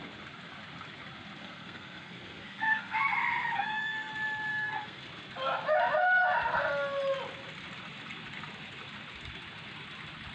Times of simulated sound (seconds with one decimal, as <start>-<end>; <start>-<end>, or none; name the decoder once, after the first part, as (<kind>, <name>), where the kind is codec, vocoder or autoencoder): 1.4-4.1 (codec, SNAC); 4.5-5.0